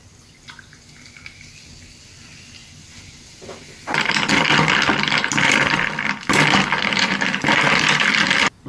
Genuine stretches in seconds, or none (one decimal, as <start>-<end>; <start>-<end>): 0.0-2.6; 6.9-8.7